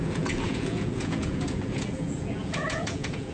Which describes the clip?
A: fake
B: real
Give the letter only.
A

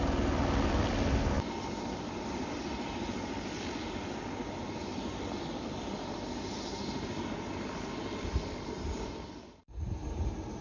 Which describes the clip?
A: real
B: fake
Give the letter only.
A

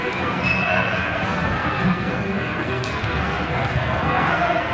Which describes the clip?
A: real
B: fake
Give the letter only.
B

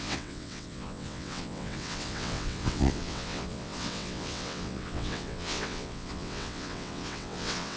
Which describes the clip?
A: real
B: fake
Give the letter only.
B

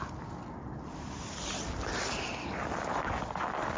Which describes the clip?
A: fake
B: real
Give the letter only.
B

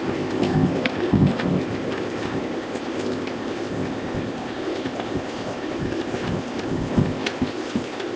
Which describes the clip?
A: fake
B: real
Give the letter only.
A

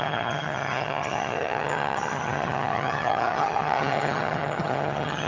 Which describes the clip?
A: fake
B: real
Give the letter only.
A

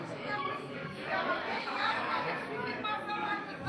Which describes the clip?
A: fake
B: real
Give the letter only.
A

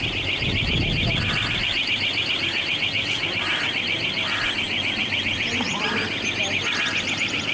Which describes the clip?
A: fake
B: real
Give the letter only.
B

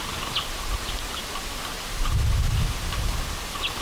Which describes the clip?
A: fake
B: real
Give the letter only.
B